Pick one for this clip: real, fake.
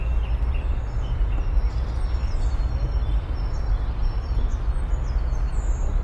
real